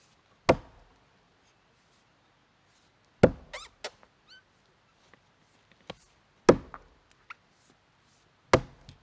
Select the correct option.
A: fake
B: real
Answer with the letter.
B